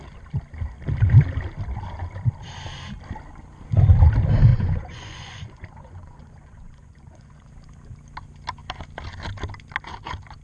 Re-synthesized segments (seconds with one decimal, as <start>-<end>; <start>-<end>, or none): 4.5-7.5